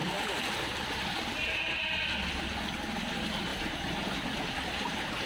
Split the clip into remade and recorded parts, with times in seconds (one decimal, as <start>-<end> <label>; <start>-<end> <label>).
0.0-5.3 recorded